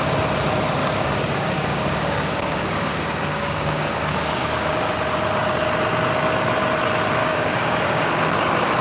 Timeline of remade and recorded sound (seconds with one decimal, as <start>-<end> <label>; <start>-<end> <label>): 0.0-0.8 recorded; 0.8-4.7 remade; 4.7-7.2 recorded; 7.2-8.1 remade; 8.1-8.8 recorded